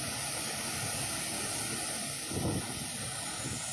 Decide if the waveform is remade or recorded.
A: recorded